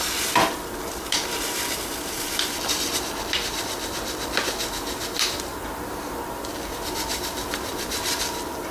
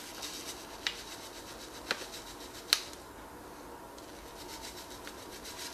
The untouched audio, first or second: second